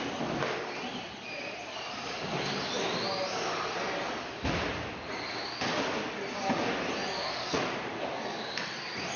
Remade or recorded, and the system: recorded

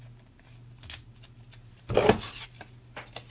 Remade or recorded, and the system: recorded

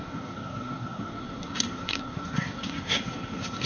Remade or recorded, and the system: remade, codec, SNAC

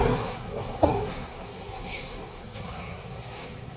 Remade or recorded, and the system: remade, codec, SNAC